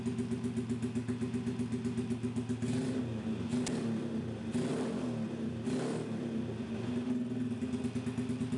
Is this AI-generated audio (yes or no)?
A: no